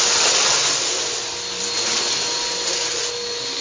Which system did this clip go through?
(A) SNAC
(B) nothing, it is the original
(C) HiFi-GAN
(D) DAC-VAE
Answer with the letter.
B